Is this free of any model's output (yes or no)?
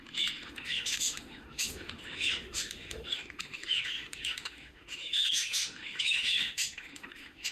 no